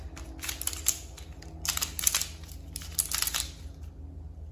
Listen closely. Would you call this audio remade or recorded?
recorded